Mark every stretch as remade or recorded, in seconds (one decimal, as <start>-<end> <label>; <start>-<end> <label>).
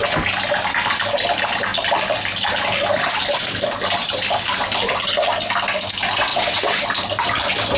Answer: 0.0-6.3 recorded; 6.3-6.8 remade; 6.8-7.8 recorded